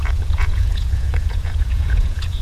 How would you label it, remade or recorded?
remade